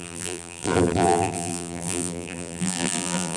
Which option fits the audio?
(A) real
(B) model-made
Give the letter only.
B